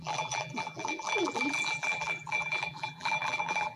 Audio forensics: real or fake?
fake